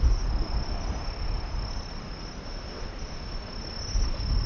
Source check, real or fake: real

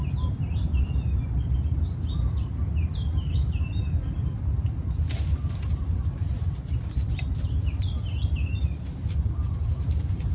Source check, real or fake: real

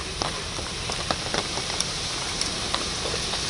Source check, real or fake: fake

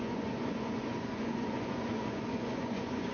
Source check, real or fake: fake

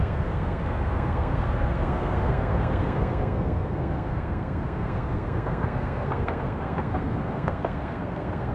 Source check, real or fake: fake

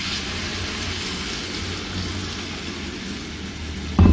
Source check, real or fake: real